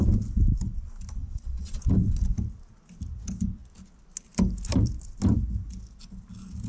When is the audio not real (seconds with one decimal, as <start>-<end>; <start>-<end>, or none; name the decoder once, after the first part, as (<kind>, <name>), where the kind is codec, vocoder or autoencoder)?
1.2-1.8 (vocoder, WaveNeXt)